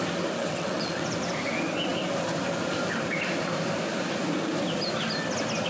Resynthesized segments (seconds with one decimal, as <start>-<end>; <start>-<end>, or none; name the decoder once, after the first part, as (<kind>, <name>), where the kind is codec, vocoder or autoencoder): 0.4-1.0 (vocoder, WaveNeXt)